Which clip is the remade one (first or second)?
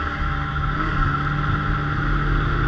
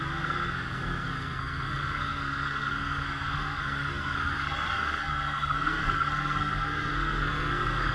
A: second